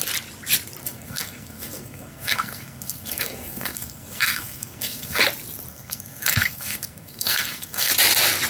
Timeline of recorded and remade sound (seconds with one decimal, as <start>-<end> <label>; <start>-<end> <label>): 0.0-0.8 recorded; 0.8-5.2 remade; 5.2-5.7 recorded; 5.7-7.9 remade; 7.9-8.5 recorded